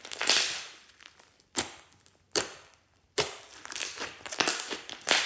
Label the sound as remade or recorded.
recorded